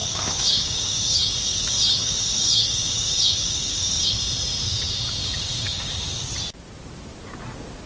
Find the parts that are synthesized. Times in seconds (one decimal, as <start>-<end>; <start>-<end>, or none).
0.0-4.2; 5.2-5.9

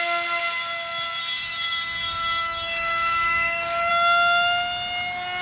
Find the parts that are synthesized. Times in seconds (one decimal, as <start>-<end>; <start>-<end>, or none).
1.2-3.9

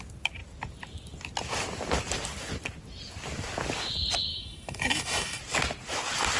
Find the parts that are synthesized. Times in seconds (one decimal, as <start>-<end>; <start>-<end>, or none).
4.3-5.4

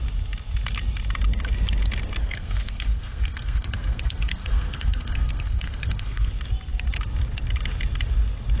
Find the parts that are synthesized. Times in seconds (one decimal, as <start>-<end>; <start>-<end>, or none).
2.2-6.3

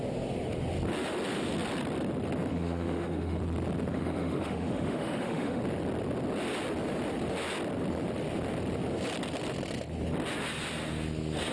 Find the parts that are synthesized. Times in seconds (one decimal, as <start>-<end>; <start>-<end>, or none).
2.5-3.4; 3.9-5.6